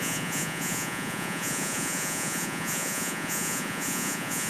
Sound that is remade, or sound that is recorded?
remade